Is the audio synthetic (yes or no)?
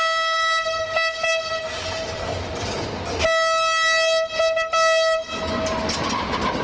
no